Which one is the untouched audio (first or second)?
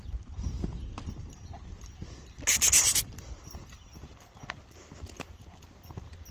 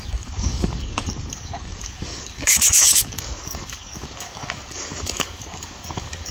first